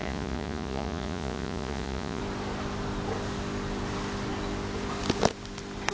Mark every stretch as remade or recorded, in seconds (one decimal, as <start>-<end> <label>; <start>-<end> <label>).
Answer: 0.0-2.2 remade; 2.2-5.9 recorded